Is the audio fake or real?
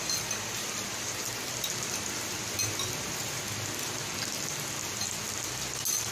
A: real